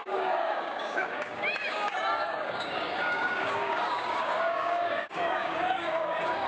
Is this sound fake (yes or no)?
yes